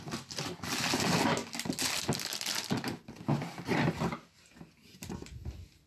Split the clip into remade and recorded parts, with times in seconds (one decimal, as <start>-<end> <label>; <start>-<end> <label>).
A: 0.0-5.9 recorded